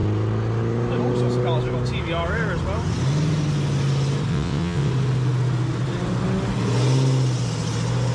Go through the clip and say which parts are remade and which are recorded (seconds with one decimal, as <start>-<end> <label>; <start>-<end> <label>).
0.0-4.3 recorded; 4.3-4.9 remade; 4.9-8.1 recorded